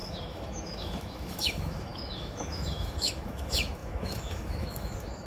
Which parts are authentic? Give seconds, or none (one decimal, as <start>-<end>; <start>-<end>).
none